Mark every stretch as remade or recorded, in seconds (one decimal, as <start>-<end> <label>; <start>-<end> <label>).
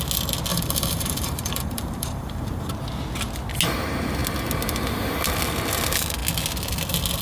0.0-0.5 recorded; 0.5-2.7 remade; 2.7-7.2 recorded